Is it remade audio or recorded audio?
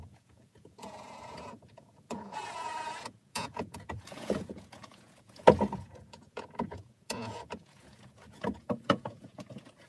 remade